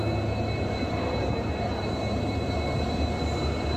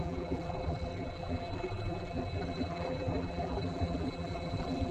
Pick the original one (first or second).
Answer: first